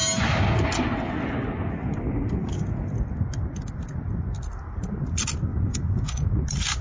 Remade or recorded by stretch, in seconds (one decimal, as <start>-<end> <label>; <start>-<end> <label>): 0.0-5.5 recorded; 5.5-6.2 remade; 6.2-6.8 recorded